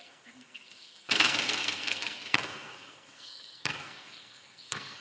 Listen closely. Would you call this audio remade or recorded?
remade